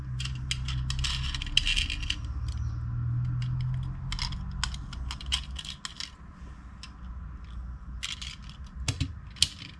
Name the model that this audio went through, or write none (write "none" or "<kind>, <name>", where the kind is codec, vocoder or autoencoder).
none